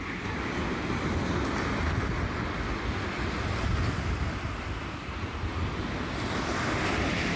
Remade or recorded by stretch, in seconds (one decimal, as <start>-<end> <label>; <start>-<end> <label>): 0.0-7.4 recorded